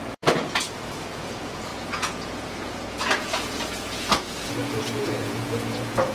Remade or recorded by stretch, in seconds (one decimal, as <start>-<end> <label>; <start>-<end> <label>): 0.0-6.1 remade